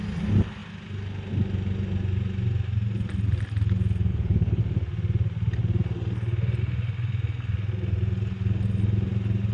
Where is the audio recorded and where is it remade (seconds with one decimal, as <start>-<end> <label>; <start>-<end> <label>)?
0.0-4.1 recorded; 4.1-4.6 remade; 4.6-9.5 recorded